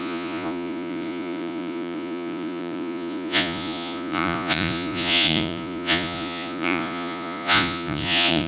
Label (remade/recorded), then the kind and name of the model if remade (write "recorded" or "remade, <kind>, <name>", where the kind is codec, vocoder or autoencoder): remade, vocoder, Vocos